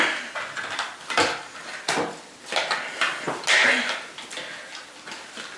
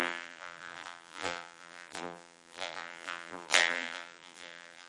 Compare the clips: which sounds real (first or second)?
first